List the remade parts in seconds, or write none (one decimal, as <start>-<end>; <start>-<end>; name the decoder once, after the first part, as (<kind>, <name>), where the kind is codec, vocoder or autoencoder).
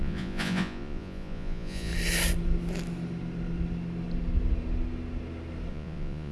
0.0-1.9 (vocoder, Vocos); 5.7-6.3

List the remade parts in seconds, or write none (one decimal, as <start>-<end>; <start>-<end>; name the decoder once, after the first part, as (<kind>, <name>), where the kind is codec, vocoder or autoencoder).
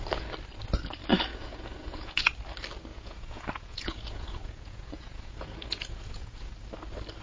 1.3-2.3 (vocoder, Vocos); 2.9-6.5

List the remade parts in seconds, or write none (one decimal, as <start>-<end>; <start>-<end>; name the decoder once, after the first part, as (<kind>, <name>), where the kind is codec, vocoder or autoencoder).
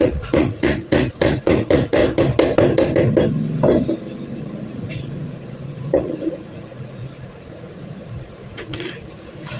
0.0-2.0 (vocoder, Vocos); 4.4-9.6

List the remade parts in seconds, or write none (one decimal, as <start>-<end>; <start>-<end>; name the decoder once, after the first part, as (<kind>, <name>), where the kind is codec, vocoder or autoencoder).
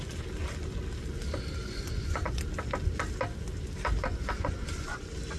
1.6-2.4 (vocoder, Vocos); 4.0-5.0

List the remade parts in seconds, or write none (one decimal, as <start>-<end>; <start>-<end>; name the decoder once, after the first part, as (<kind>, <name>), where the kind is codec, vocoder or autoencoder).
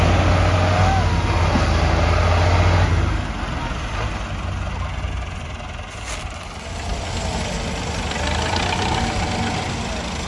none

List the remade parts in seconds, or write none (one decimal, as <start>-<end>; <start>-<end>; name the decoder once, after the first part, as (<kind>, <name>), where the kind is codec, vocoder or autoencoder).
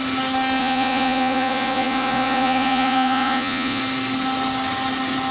0.6-3.8 (vocoder, Vocos)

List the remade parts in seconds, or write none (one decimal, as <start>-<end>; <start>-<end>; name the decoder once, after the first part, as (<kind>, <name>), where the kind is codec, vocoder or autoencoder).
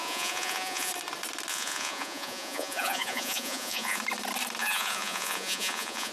0.0-0.9 (vocoder, Vocos); 1.5-4.0; 4.6-6.1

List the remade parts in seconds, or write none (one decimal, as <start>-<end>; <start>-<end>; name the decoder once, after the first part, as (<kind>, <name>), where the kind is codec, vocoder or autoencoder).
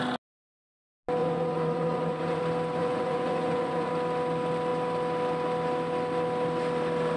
1.2-2.4 (vocoder, Vocos); 2.8-3.9